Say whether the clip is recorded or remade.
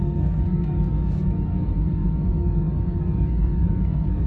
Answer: remade